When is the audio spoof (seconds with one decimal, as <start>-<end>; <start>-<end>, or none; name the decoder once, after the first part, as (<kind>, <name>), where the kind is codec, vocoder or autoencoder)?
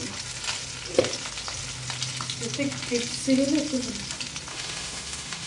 4.5-5.5 (autoencoder, DAC-VAE)